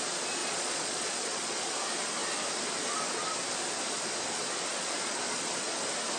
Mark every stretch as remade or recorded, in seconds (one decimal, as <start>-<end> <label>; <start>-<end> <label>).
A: 0.0-0.4 recorded; 0.4-1.6 remade; 1.6-4.7 recorded; 4.7-5.2 remade; 5.2-6.2 recorded